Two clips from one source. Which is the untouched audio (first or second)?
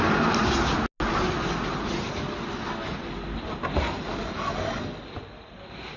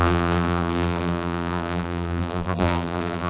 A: first